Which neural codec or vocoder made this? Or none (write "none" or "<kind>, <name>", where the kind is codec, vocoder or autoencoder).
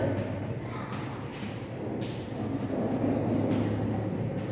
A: none